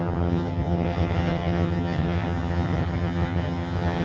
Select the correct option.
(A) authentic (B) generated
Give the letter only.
B